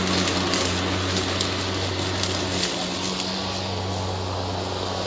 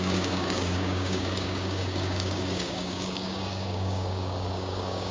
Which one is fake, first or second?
second